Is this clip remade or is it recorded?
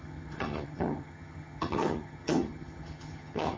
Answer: remade